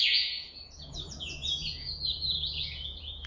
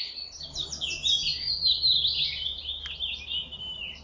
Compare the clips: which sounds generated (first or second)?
first